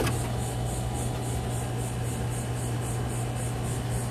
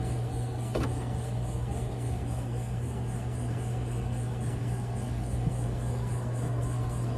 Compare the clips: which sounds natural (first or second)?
first